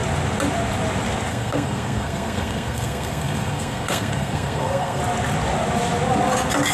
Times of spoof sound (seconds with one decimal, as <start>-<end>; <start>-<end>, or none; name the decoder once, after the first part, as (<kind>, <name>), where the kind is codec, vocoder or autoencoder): 1.3-5.0 (codec, SNAC)